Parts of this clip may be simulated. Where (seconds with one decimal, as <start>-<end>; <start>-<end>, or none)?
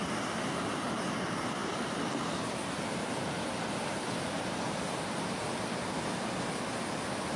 1.6-6.0